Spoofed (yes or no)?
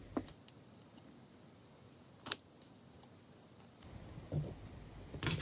no